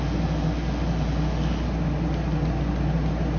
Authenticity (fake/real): real